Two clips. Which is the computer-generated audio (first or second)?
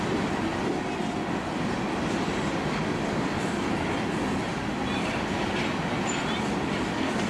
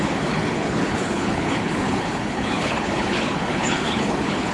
second